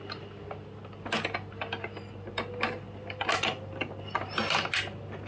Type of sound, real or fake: real